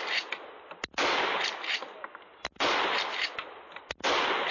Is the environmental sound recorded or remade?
recorded